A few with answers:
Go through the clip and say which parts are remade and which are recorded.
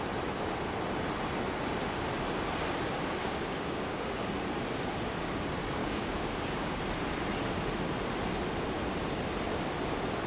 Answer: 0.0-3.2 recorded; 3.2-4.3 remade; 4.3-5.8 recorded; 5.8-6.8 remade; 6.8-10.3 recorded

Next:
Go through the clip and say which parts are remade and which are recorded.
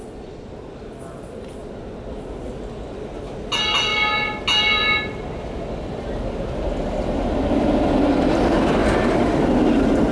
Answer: 0.0-10.1 recorded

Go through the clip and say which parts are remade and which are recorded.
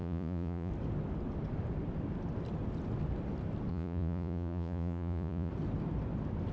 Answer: 0.0-0.7 remade; 0.7-3.7 recorded; 3.7-5.5 remade; 5.5-6.5 recorded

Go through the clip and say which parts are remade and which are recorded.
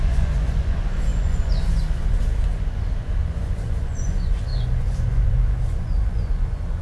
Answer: 0.0-6.8 remade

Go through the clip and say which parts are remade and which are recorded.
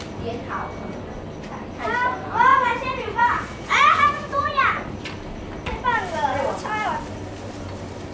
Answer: 0.0-2.5 recorded; 2.5-4.7 remade; 4.7-8.1 recorded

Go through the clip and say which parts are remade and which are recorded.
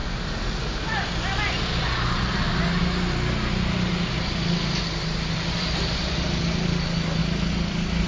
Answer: 0.0-8.1 recorded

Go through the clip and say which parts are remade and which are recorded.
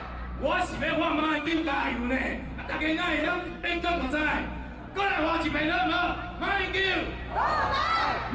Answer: 0.0-1.2 recorded; 1.2-1.9 remade; 1.9-3.2 recorded; 3.2-4.1 remade; 4.1-8.3 recorded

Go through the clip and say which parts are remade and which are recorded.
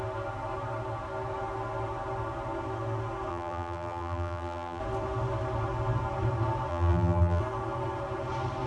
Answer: 0.0-3.3 recorded; 3.3-4.8 remade; 4.8-6.7 recorded; 6.7-7.4 remade; 7.4-8.7 recorded